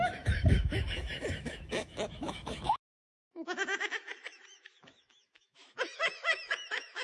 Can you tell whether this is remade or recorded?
remade